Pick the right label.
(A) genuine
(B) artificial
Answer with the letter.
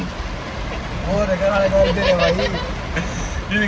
A